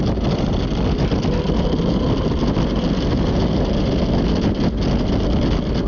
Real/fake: real